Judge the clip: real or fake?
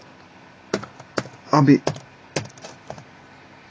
real